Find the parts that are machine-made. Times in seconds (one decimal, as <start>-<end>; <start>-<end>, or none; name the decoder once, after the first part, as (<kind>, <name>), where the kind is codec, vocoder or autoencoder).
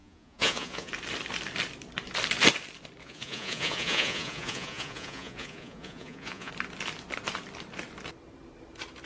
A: 0.0-0.9 (vocoder, Vocos); 3.0-6.5